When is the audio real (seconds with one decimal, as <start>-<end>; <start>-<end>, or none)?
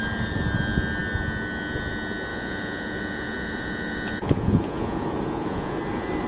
0.0-2.3; 5.8-6.3